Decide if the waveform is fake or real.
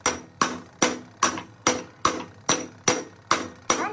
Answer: real